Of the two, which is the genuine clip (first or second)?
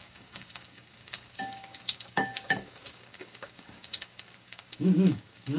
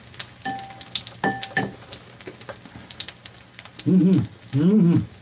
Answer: second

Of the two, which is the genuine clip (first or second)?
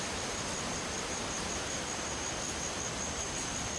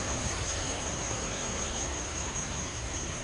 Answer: first